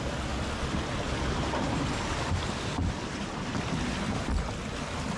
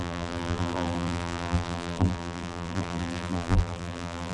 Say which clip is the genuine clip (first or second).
first